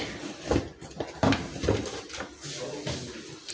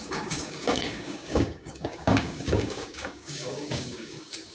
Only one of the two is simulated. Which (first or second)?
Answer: second